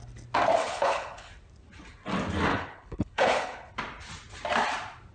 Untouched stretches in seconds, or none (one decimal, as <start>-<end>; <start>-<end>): 0.0-0.6; 1.3-2.5; 3.7-5.1